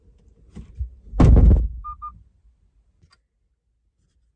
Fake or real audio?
real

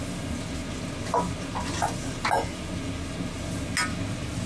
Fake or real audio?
real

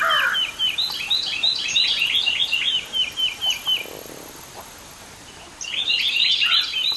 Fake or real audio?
real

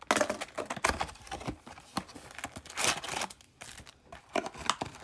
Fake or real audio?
real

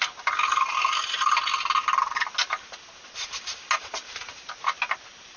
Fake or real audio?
real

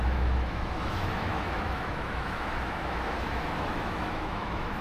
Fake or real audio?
fake